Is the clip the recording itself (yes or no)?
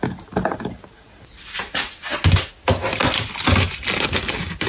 yes